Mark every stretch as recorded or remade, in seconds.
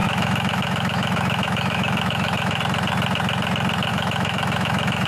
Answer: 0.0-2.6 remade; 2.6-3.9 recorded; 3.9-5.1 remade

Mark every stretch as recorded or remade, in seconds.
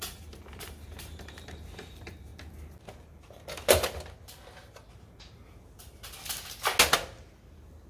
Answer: 0.0-2.3 remade; 2.3-4.9 recorded; 4.9-5.4 remade; 5.4-7.9 recorded